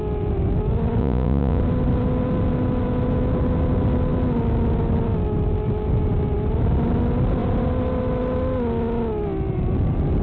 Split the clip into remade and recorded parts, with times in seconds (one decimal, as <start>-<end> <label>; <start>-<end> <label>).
0.0-1.0 recorded; 1.0-1.6 remade; 1.6-10.2 recorded